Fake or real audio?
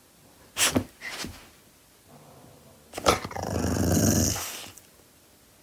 real